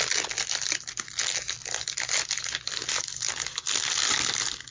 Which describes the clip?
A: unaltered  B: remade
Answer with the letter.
A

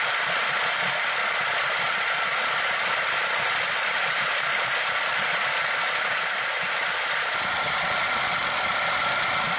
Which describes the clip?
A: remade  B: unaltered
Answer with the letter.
B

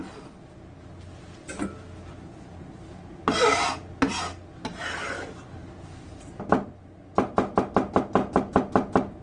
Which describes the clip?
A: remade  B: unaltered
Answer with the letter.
B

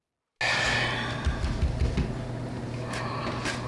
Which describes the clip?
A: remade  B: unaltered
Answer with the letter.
B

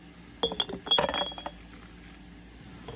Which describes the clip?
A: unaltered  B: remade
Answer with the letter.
A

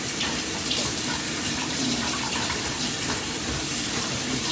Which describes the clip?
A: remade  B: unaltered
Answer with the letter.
A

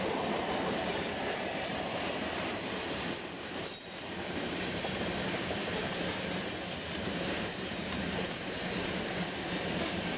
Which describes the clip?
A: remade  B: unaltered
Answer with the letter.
A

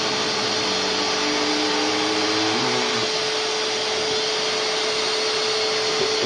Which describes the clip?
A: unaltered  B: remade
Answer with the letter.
A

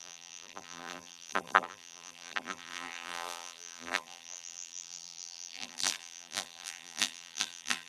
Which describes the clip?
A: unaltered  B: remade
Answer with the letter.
B